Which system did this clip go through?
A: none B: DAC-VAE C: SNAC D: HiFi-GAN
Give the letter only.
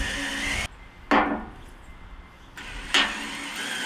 A